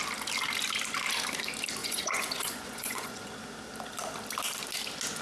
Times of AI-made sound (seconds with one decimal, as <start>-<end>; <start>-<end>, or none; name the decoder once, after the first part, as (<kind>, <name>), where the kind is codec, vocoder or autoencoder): 1.8-3.3 (vocoder, Vocos)